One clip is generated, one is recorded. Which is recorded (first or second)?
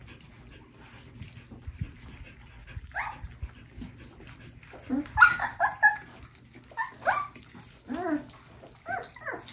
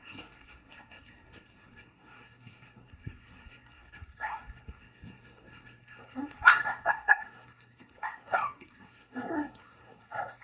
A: first